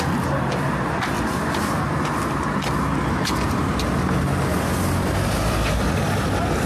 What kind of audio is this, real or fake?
real